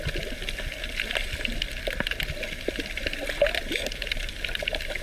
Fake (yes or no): no